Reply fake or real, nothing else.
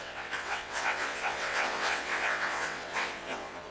fake